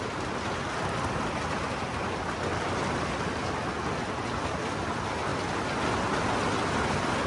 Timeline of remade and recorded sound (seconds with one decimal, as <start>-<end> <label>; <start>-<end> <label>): 0.0-7.3 recorded